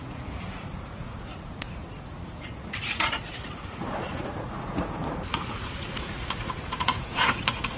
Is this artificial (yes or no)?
yes